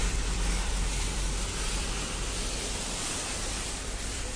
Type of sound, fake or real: fake